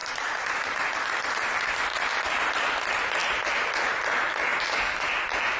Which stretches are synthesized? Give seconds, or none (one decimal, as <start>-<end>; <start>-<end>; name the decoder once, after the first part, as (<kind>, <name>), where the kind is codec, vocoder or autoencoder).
0.0-1.5 (vocoder, BigVGAN v2); 1.9-2.6